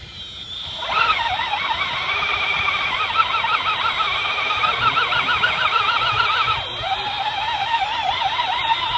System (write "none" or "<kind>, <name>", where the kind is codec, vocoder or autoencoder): none